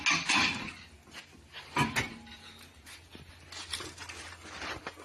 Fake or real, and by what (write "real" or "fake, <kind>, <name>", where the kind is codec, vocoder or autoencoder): real